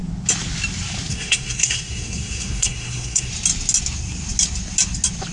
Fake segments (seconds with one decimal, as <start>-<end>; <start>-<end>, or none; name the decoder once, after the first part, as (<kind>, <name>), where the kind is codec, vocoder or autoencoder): 1.1-3.3 (codec, SNAC)